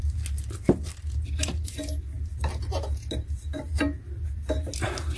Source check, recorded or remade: recorded